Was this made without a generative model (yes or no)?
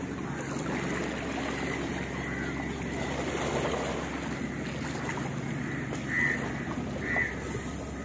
yes